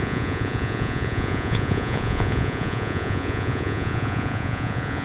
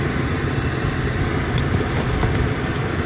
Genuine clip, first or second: second